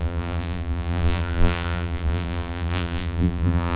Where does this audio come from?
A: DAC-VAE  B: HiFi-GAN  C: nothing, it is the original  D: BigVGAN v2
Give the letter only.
D